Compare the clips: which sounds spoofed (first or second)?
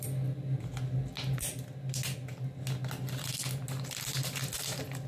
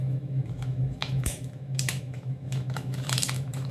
second